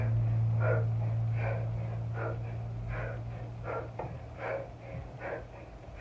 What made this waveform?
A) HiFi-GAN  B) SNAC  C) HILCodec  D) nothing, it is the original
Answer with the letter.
D